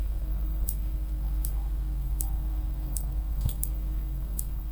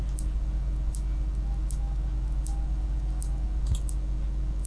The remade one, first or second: first